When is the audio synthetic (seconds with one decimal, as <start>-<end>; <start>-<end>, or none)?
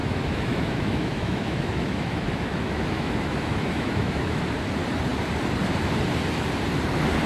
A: 0.0-4.4